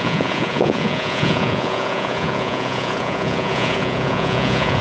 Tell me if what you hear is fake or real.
fake